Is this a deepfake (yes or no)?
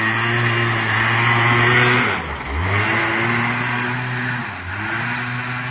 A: no